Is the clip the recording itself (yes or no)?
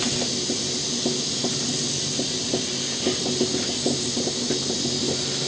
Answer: yes